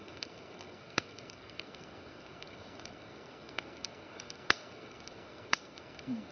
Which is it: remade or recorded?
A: remade